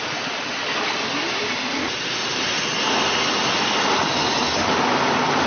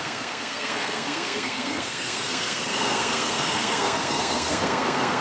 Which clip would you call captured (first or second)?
first